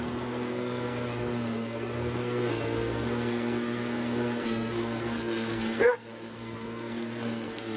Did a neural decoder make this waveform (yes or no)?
yes